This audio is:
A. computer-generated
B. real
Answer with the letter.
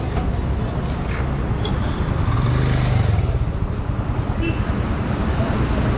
B